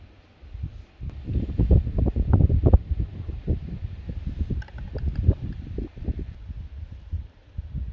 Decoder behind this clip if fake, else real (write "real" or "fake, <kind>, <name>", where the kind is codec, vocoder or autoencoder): real